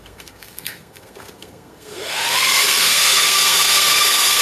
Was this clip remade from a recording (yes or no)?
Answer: yes